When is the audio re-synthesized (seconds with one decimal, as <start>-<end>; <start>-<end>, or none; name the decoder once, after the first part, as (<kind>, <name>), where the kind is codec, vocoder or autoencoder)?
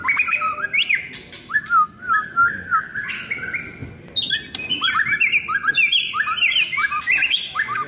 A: none